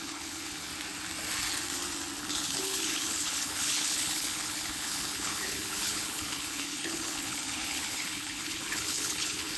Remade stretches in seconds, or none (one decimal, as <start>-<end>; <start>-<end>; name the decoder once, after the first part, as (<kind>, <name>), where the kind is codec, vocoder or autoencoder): 0.0-0.7 (codec, HILCodec); 2.2-9.6